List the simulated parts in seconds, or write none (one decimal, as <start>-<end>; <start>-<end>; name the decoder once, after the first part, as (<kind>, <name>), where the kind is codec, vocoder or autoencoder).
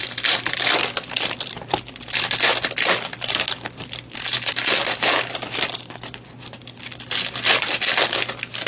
none